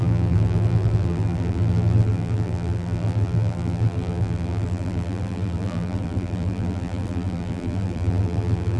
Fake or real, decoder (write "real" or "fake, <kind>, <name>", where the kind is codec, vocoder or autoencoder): fake, vocoder, BigVGAN v2